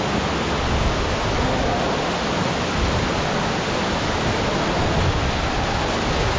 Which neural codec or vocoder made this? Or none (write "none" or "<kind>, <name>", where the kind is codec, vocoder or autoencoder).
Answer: none